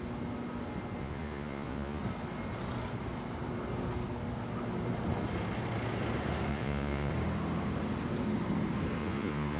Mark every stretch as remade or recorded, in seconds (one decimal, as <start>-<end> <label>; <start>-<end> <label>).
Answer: 0.0-1.0 recorded; 1.0-2.0 remade; 2.0-6.5 recorded; 6.5-7.1 remade; 7.1-9.0 recorded; 9.0-9.6 remade